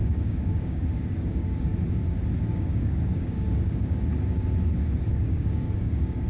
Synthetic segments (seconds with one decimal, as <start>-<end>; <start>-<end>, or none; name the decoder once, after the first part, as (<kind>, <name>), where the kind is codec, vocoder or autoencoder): 0.0-1.7 (codec, DAC); 2.4-4.1; 5.1-6.3

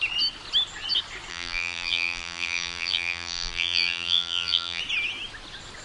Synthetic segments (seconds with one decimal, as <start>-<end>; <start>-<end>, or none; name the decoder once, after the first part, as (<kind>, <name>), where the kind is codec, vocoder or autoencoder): 1.3-4.8 (vocoder, BigVGAN v2)

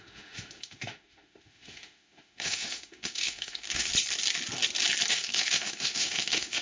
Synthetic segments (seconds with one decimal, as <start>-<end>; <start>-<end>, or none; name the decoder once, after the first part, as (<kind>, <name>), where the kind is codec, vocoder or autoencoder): 0.0-3.9 (autoencoder, DAC-VAE); 5.1-6.6

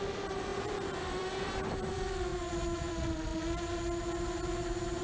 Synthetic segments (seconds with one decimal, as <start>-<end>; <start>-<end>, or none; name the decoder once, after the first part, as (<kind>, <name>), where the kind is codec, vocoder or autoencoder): 0.5-1.6 (vocoder, BigVGAN v2); 2.3-2.9

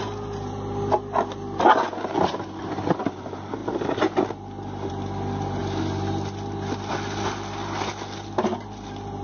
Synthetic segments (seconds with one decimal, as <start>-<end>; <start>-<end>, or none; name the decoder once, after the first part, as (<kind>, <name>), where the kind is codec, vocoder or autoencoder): none